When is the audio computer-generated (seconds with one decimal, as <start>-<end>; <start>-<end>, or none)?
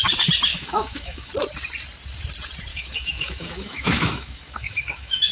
0.5-1.3; 2.7-5.3